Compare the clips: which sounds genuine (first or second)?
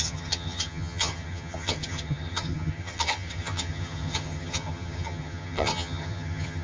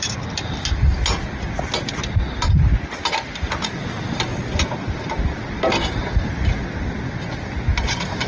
second